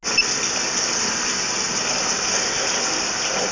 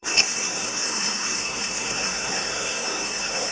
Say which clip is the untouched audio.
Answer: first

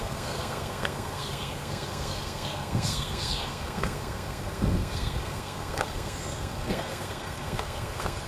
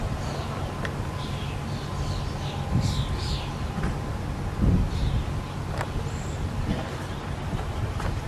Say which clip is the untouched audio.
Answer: second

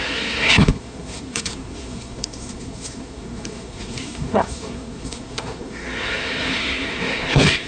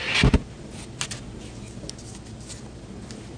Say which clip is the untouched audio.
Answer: second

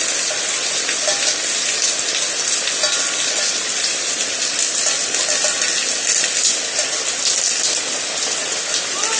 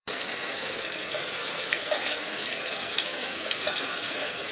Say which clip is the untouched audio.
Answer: first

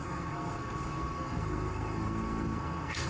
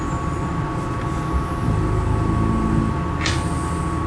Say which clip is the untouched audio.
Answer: second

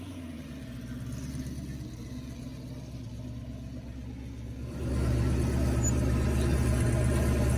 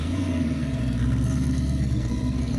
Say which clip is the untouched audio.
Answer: first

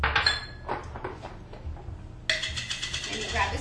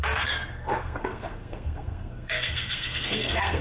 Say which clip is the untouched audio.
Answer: first